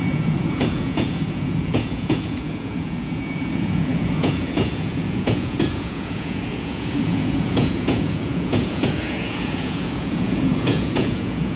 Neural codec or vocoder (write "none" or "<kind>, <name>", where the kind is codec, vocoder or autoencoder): vocoder, Vocos